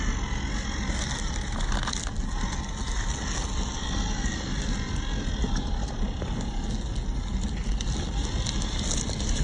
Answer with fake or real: real